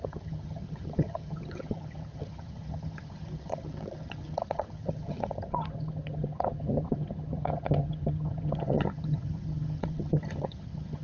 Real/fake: fake